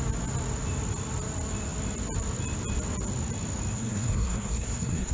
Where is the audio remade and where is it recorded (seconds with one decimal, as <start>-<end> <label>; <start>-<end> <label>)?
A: 0.0-3.7 recorded; 3.7-5.1 remade